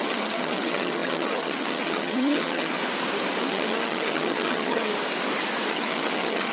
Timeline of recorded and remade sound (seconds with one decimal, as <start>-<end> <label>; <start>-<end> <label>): 0.0-2.8 remade; 2.8-3.4 recorded; 3.4-4.9 remade; 4.9-5.7 recorded; 5.7-6.5 remade